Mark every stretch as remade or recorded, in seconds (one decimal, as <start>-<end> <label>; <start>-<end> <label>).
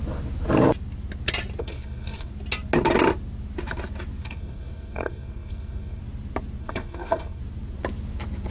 0.0-1.6 recorded; 1.6-2.3 remade; 2.3-4.2 recorded; 4.2-6.0 remade; 6.0-6.6 recorded; 6.6-7.4 remade; 7.4-8.5 recorded